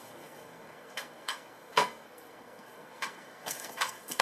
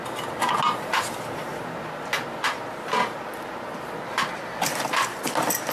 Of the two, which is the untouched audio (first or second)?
second